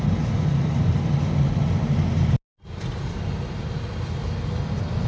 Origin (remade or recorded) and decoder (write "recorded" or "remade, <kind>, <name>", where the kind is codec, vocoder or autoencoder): recorded